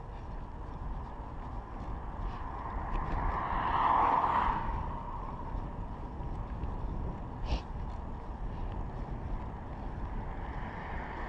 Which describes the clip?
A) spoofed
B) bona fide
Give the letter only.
B